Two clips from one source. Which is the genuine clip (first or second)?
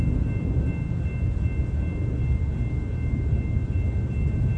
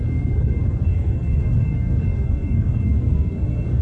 first